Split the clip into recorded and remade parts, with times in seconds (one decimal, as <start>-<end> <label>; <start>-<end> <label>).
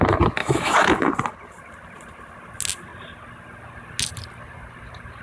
0.0-0.4 recorded; 0.4-1.1 remade; 1.1-5.2 recorded